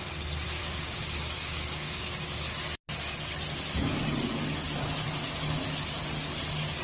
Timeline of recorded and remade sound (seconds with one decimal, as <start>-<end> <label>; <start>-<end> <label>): 0.0-0.6 recorded; 0.6-2.0 remade; 2.0-6.8 recorded